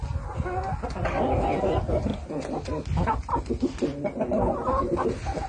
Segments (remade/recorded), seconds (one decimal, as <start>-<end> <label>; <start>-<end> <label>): 0.0-5.5 recorded